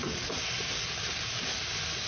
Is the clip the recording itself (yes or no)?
yes